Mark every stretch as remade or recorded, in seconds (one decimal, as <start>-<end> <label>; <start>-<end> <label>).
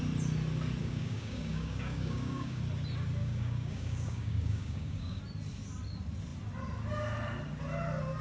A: 0.0-0.8 recorded; 0.8-2.6 remade; 2.6-3.2 recorded; 3.2-5.2 remade; 5.2-8.2 recorded